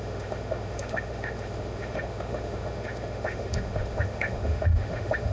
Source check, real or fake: fake